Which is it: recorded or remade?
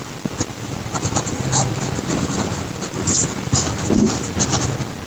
recorded